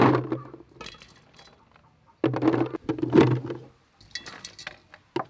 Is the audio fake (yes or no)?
no